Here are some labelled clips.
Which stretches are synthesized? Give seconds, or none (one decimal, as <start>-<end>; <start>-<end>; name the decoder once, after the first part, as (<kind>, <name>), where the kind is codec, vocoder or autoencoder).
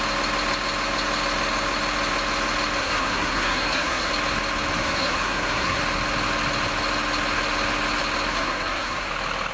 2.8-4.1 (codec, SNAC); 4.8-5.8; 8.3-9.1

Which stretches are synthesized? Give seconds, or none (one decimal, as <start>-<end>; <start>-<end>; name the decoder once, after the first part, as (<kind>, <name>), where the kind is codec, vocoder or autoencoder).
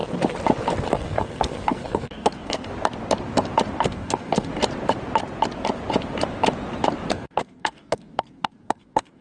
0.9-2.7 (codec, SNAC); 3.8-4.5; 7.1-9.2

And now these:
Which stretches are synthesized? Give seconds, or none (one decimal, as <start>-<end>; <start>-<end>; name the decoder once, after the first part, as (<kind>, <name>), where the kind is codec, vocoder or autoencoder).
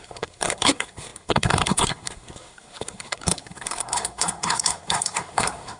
0.0-5.8 (codec, SNAC)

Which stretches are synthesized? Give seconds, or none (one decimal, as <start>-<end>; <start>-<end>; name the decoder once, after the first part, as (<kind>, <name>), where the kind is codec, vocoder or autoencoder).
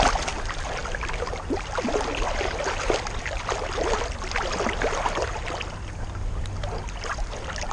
none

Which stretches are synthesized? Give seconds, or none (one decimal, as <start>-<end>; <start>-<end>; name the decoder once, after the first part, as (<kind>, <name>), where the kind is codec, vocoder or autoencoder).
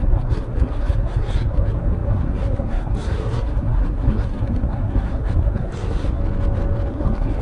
0.0-6.2 (codec, SNAC); 6.9-7.4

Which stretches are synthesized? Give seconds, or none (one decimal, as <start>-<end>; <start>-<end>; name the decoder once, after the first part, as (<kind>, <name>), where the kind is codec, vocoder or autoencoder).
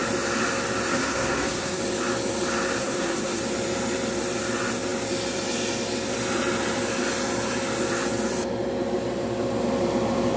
0.9-1.8 (codec, SNAC); 2.8-3.4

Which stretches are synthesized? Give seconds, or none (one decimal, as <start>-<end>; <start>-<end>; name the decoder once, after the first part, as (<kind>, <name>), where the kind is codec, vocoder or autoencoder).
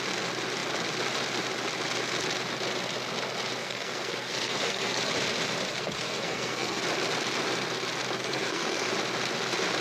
3.6-5.1 (codec, SNAC); 5.7-6.8; 8.2-8.9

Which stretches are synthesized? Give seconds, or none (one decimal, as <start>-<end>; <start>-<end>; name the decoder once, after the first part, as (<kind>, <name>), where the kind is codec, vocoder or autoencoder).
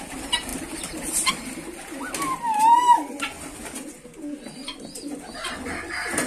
none